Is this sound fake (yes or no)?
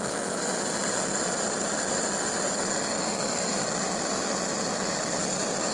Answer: no